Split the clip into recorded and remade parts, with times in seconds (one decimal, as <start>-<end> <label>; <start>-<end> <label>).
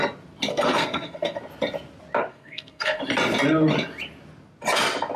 0.0-0.5 recorded; 0.5-1.4 remade; 1.4-2.3 recorded; 2.3-3.0 remade; 3.0-5.2 recorded